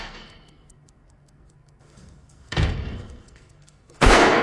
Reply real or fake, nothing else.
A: fake